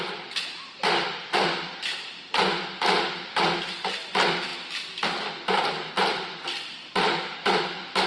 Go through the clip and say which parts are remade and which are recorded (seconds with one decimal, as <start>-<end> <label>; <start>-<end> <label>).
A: 0.0-8.1 recorded